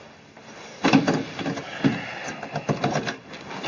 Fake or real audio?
real